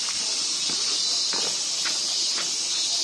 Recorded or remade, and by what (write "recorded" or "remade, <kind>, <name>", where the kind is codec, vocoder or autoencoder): recorded